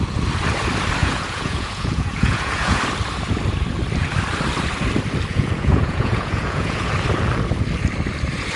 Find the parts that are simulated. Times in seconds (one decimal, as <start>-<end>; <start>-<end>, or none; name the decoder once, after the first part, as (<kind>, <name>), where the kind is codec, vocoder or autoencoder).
1.0-2.8 (vocoder, Vocos); 5.3-6.9